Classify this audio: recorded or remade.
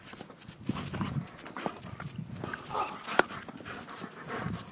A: recorded